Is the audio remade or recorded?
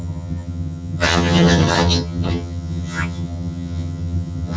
remade